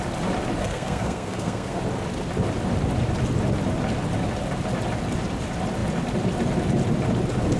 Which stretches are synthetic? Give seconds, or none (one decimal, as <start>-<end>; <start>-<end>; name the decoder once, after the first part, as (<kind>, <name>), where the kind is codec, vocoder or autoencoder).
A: 0.6-1.8 (codec, SNAC)